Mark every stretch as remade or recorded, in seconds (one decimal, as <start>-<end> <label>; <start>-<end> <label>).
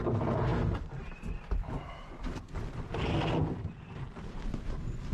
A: 0.0-5.1 recorded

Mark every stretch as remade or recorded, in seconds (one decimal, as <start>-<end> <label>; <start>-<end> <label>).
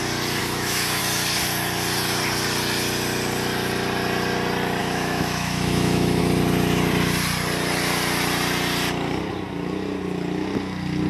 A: 0.0-0.4 recorded; 0.4-1.0 remade; 1.0-4.8 recorded; 4.8-6.2 remade; 6.2-11.1 recorded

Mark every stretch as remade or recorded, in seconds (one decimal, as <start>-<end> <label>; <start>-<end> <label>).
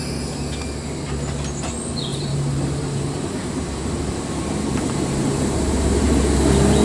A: 0.0-2.1 recorded; 2.1-6.2 remade; 6.2-6.8 recorded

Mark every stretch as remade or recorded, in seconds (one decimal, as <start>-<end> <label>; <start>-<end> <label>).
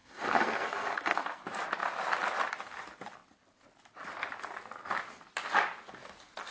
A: 0.0-1.4 remade; 1.4-6.5 recorded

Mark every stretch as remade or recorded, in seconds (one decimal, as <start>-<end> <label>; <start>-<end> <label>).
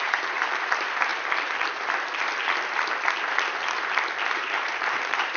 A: 0.0-1.1 remade; 1.1-4.3 recorded; 4.3-5.4 remade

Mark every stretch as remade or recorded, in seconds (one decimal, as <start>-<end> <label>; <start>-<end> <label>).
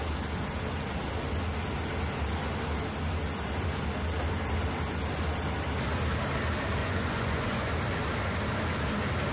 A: 0.0-6.8 recorded; 6.8-7.7 remade; 7.7-9.3 recorded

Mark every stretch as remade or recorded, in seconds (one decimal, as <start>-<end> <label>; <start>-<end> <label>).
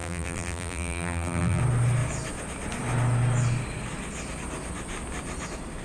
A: 0.0-1.6 remade; 1.6-5.8 recorded